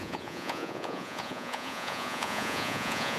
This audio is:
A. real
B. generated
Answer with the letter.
B